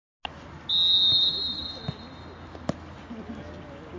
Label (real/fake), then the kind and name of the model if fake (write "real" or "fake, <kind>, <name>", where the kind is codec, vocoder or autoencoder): real